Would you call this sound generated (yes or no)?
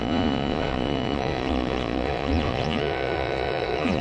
yes